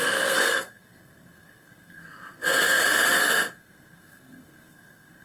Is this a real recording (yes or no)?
no